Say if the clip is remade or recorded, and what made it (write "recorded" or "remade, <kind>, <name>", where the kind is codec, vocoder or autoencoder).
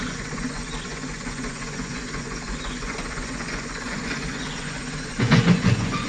remade, vocoder, Vocos